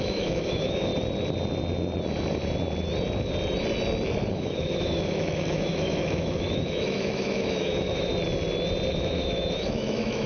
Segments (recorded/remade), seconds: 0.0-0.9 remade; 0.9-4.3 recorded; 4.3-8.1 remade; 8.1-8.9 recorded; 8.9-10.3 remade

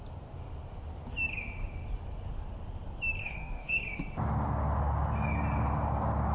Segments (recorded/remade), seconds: 0.0-3.2 recorded; 3.2-3.8 remade; 3.8-6.3 recorded

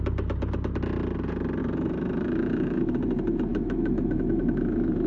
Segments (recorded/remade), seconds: 0.0-1.6 recorded; 1.6-2.9 remade; 2.9-3.5 recorded; 3.5-5.1 remade

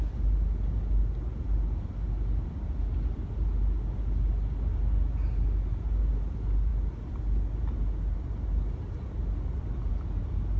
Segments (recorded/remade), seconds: 0.0-10.6 recorded

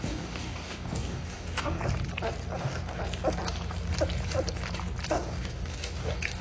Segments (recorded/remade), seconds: 0.0-1.8 remade; 1.8-2.6 recorded; 2.6-3.0 remade; 3.0-5.1 recorded; 5.1-6.4 remade

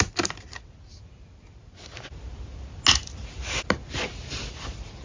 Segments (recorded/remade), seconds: 0.0-5.0 recorded

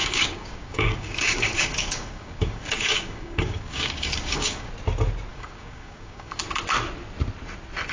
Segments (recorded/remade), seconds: 0.0-4.7 remade; 4.7-5.3 recorded; 5.3-6.4 remade; 6.4-7.9 recorded

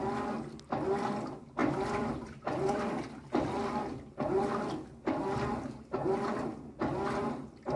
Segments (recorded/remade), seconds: 0.0-1.6 recorded; 1.6-4.0 remade; 4.0-7.8 recorded